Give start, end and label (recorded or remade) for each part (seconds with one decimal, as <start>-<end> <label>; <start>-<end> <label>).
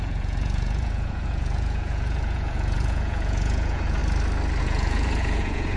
0.0-4.0 remade; 4.0-4.6 recorded; 4.6-5.8 remade